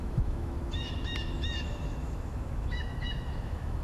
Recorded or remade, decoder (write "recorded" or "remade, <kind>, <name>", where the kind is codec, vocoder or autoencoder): remade, autoencoder, DAC-VAE